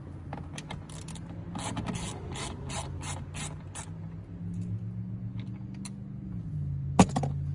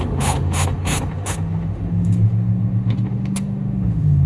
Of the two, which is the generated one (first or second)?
second